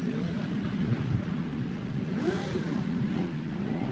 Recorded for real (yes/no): no